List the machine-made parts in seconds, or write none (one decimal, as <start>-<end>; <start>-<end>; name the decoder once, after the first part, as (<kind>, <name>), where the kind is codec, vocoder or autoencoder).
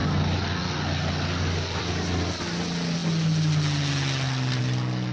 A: none